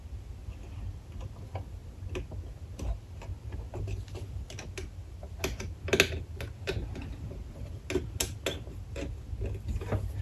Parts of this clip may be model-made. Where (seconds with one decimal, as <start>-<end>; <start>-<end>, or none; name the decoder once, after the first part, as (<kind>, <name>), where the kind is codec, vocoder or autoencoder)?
none